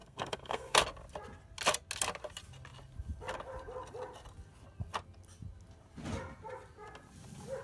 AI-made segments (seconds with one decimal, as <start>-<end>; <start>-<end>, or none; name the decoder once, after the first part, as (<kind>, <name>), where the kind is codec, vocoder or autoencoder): 0.0-0.8 (codec, SNAC)